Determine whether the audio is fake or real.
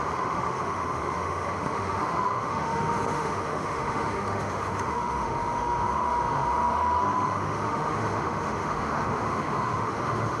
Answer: fake